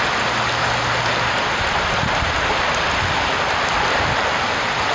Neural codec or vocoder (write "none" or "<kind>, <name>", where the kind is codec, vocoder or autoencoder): none